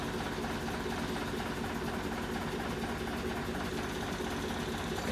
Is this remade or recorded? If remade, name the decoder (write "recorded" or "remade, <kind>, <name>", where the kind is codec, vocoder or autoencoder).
recorded